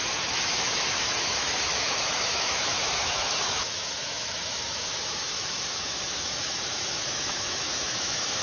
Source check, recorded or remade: remade